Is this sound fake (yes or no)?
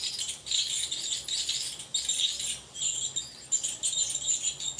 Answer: no